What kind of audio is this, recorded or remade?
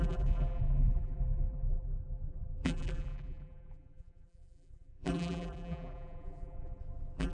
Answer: remade